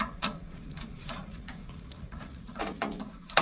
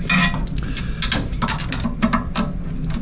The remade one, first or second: first